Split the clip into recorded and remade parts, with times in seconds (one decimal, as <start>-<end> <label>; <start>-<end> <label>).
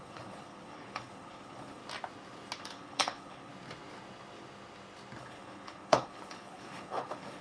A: 0.0-1.8 remade; 1.8-2.6 recorded; 2.6-3.5 remade; 3.5-5.2 recorded; 5.2-7.4 remade